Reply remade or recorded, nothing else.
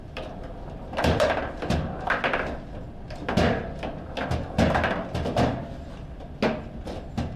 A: recorded